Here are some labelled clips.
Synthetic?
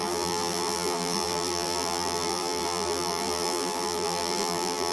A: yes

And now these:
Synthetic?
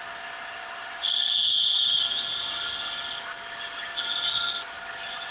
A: no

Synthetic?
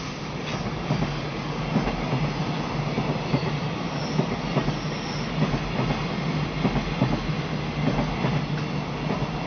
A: no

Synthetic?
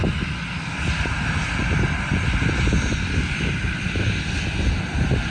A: no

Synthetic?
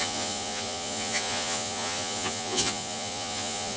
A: yes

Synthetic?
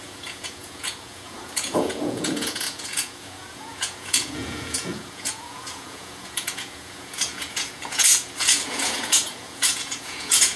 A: yes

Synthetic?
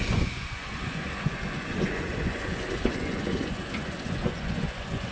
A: yes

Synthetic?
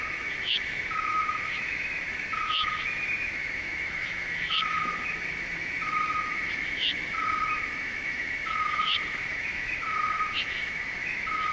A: yes